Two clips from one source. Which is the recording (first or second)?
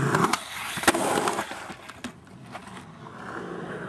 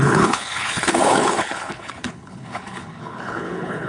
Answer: first